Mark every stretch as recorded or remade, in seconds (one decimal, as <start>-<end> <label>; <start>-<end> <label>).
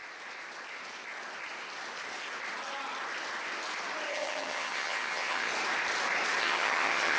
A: 0.0-4.1 recorded; 4.1-5.5 remade; 5.5-6.4 recorded; 6.4-7.2 remade